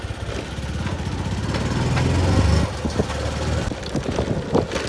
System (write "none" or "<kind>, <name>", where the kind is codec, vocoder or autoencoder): none